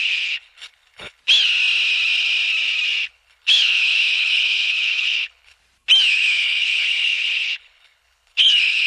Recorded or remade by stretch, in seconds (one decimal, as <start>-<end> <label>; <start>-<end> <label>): 0.0-1.2 remade; 1.2-3.1 recorded; 3.1-5.6 remade; 5.6-6.1 recorded; 6.1-8.9 remade